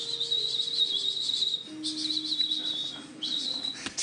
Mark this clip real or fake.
real